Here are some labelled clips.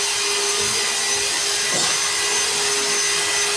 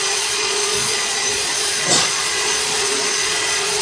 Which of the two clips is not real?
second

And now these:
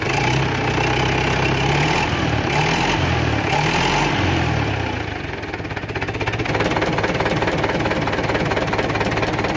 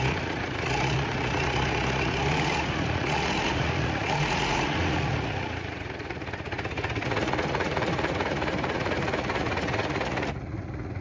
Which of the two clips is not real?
second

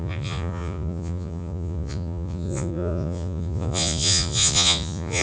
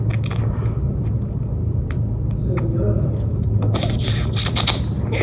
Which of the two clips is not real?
first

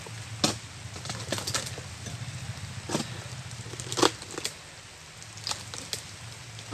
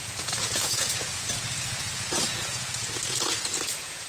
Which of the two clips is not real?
second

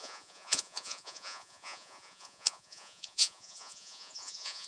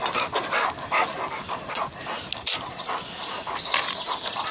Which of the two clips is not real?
first